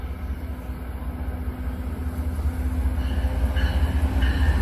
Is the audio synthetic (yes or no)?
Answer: no